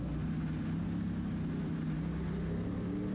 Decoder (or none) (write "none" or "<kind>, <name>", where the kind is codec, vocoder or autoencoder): none